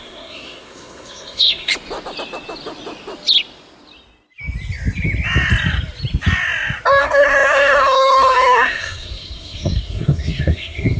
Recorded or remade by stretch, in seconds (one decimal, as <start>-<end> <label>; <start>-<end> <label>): 0.0-1.7 remade; 1.7-7.0 recorded; 7.0-11.0 remade